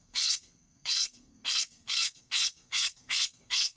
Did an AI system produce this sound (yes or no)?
yes